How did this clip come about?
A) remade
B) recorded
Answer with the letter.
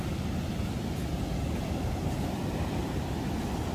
B